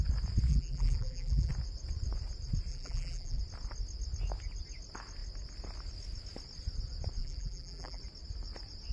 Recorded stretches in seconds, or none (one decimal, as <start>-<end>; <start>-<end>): 0.0-0.5; 1.5-2.7; 3.4-7.2; 8.0-8.9